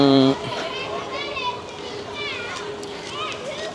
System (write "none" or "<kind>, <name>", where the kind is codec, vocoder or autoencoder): vocoder, BigVGAN v2